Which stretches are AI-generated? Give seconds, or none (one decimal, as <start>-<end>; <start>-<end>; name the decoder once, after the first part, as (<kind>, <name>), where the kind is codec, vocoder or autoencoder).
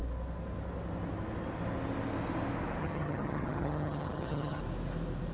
2.8-4.6 (vocoder, HiFi-GAN)